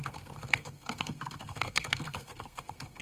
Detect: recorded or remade remade